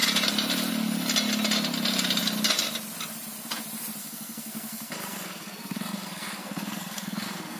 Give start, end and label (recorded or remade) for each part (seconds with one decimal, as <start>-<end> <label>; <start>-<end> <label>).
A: 0.0-4.0 recorded; 4.0-7.6 remade